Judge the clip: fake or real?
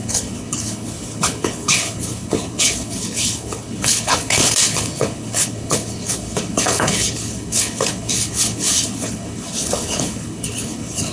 fake